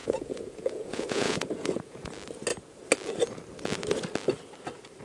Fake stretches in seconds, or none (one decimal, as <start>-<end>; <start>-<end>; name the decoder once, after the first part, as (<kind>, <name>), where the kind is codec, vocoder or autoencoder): 0.0-2.1 (vocoder, Vocos)